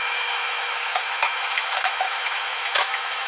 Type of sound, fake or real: fake